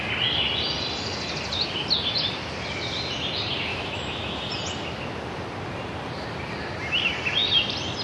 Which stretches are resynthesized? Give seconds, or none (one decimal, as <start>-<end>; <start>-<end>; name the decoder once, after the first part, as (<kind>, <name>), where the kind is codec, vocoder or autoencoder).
3.7-4.4 (autoencoder, DAC-VAE)

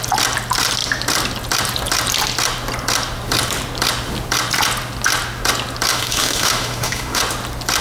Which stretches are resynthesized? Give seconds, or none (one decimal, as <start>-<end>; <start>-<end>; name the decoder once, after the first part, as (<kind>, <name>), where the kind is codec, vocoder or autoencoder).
5.9-7.2 (autoencoder, DAC-VAE)